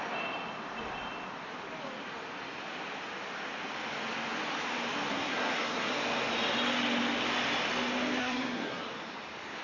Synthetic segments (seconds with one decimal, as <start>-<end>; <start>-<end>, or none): 5.1-5.9; 8.2-8.9